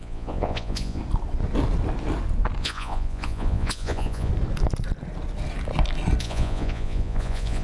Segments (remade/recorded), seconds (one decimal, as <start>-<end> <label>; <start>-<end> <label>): 0.0-1.0 remade; 1.0-2.6 recorded; 2.6-4.3 remade; 4.3-6.2 recorded; 6.2-7.6 remade